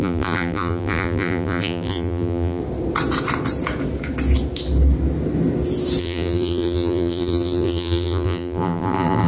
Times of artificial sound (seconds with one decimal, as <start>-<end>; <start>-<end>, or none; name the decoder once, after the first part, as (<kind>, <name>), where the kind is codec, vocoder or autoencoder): 0.0-2.6 (vocoder, BigVGAN v2); 6.0-9.3